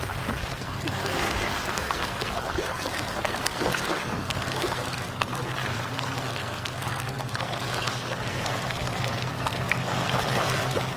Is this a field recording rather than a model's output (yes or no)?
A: no